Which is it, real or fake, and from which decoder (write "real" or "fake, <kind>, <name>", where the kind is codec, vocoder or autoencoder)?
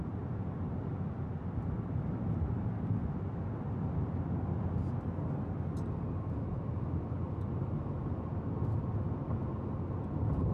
real